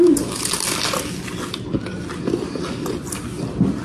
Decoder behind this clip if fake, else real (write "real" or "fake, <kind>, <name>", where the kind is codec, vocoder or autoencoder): real